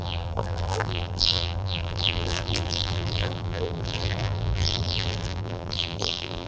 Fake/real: fake